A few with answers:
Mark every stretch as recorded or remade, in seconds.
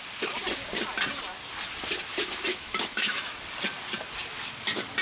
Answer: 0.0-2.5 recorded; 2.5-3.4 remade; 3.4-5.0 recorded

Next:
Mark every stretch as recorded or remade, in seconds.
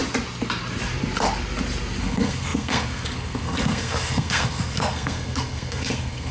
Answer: 0.0-2.0 recorded; 2.0-6.3 remade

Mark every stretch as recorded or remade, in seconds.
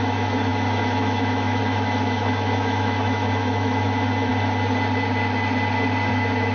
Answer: 0.0-4.3 remade; 4.3-6.1 recorded; 6.1-6.5 remade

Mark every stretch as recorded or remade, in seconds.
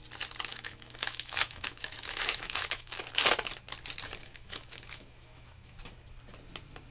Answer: 0.0-0.5 recorded; 0.5-3.0 remade; 3.0-4.2 recorded; 4.2-5.8 remade; 5.8-6.9 recorded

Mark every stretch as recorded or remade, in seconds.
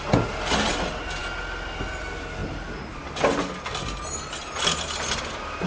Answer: 0.0-5.7 recorded